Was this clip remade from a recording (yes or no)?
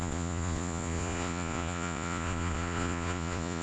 yes